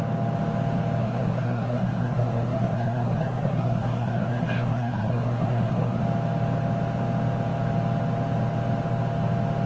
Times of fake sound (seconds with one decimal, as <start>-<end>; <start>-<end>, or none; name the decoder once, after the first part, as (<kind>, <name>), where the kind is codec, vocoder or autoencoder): 1.0-6.0 (codec, SNAC)